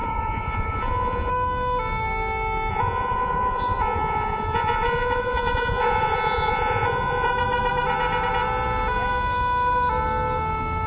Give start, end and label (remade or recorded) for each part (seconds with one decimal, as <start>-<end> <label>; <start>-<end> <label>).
0.0-1.3 remade; 1.3-2.7 recorded; 2.7-7.3 remade; 7.3-10.9 recorded